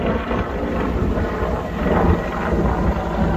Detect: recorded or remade recorded